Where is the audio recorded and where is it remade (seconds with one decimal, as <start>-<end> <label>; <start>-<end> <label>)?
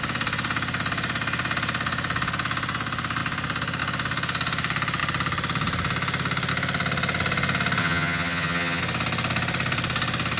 0.0-7.8 recorded; 7.8-8.8 remade; 8.8-10.4 recorded